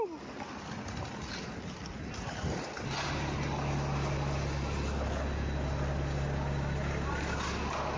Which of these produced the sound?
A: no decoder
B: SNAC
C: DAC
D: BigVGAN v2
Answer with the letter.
A